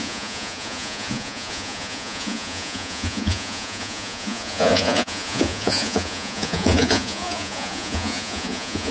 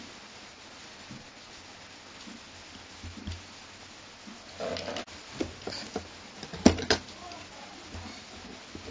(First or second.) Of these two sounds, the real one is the second